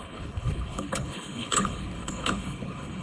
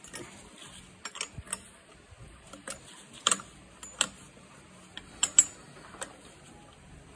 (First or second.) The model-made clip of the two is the first